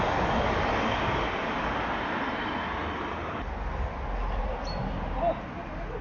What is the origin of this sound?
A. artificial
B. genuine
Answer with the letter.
B